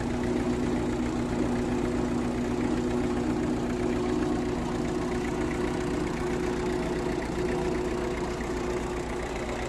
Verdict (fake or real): real